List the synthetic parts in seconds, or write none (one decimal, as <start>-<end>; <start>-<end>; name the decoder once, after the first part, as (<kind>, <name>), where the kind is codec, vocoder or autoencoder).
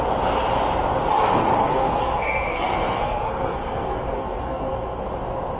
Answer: 1.6-5.0 (codec, SNAC)